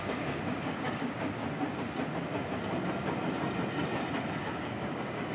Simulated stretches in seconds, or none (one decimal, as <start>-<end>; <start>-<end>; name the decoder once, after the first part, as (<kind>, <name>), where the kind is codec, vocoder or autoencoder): 0.0-1.4 (codec, DAC); 4.3-5.3